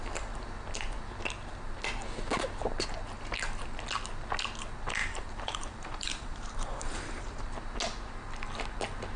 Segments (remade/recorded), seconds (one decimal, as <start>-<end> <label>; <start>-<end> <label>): 0.0-5.0 recorded; 5.0-7.4 remade; 7.4-9.2 recorded